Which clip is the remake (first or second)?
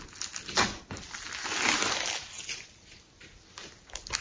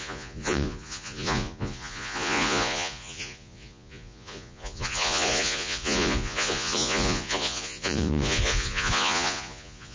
second